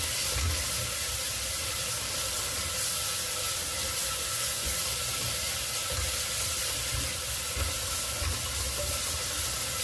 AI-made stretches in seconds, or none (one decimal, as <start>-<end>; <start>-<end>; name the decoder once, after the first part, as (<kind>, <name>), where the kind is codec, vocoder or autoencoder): 4.0-4.7 (vocoder, Vocos)